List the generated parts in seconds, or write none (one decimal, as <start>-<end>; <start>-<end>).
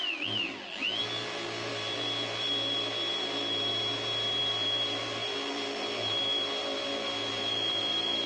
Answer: 0.0-3.7; 4.4-8.3